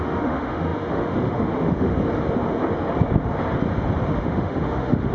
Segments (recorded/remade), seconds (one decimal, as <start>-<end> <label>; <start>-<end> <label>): 0.0-1.9 remade; 1.9-4.1 recorded; 4.1-5.1 remade